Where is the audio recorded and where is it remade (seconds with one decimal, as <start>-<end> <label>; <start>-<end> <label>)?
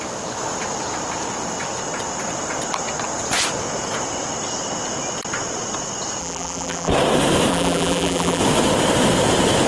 0.0-6.2 recorded; 6.2-6.9 remade; 6.9-7.5 recorded; 7.5-8.4 remade; 8.4-9.7 recorded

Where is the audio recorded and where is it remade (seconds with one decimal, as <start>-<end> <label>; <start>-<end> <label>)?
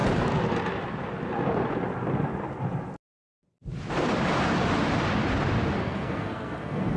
0.0-5.8 recorded; 5.8-7.0 remade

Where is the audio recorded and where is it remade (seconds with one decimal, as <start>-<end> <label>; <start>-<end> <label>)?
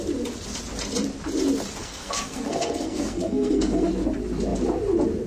0.0-1.8 recorded; 1.8-3.9 remade; 3.9-5.3 recorded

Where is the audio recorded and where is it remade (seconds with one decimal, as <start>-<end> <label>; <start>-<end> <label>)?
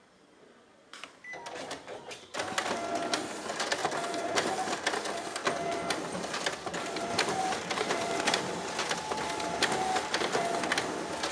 0.0-0.8 recorded; 0.8-2.4 remade; 2.4-3.8 recorded; 3.8-4.6 remade; 4.6-6.7 recorded; 6.7-8.4 remade; 8.4-11.3 recorded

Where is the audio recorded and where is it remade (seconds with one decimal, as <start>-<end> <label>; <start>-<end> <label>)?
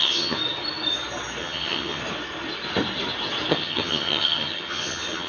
0.0-0.4 remade; 0.4-1.4 recorded; 1.4-2.0 remade; 2.0-3.5 recorded; 3.5-5.3 remade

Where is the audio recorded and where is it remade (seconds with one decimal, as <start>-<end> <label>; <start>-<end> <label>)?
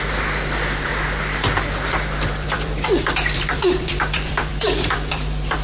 0.0-0.9 remade; 0.9-1.9 recorded; 1.9-5.6 remade